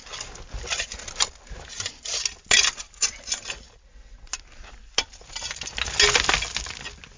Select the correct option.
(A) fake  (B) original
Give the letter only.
B